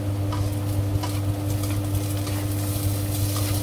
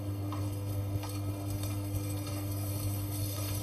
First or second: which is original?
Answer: first